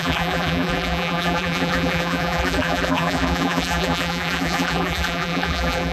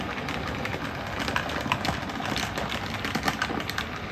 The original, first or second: second